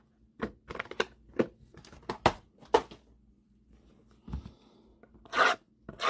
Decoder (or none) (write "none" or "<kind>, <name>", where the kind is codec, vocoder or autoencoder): none